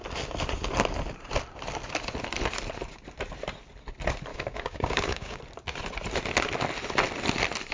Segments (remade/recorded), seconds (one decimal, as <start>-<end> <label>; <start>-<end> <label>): 0.0-4.3 recorded; 4.3-5.4 remade; 5.4-7.7 recorded